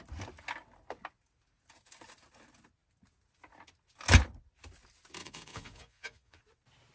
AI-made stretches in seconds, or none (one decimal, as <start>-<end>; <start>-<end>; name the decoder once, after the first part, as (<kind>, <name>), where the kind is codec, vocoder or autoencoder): 5.2-6.4 (vocoder, Vocos)